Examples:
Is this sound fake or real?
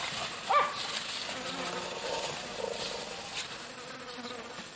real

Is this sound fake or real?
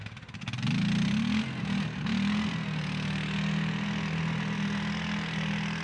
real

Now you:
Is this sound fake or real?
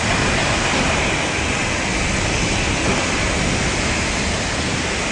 real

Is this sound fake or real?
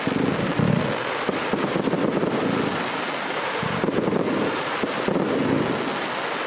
real